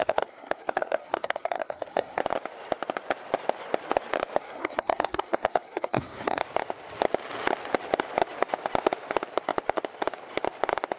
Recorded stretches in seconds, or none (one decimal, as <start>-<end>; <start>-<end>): 2.2-4.4; 6.4-11.0